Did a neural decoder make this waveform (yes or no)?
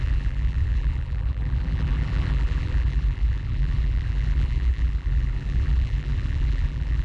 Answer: yes